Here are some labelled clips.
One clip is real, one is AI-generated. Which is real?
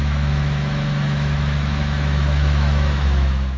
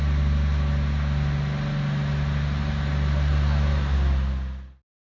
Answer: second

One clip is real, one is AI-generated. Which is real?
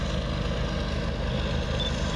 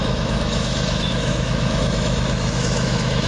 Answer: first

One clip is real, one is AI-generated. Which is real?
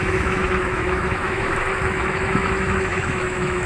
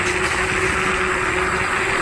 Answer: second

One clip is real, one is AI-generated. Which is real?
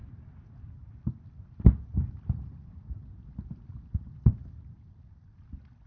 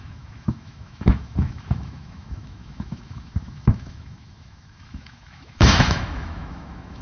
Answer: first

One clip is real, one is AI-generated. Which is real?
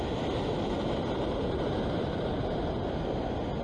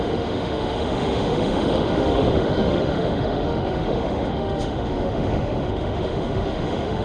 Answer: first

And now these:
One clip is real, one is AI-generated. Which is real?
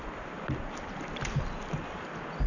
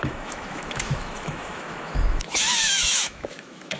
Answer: first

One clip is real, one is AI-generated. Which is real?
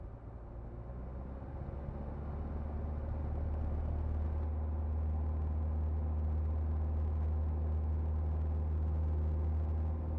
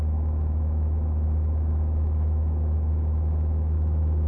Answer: first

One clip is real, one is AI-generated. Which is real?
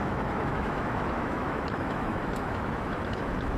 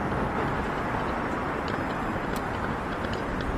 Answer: second